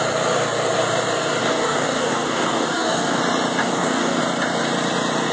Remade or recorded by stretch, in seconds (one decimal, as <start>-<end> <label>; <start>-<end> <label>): 0.0-1.4 recorded; 1.4-3.2 remade; 3.2-3.6 recorded; 3.6-4.2 remade; 4.2-5.3 recorded